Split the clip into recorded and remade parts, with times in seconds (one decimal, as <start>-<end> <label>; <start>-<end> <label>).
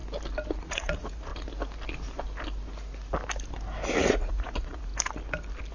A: 0.0-0.6 recorded; 0.6-1.3 remade; 1.3-3.9 recorded; 3.9-4.9 remade; 4.9-5.7 recorded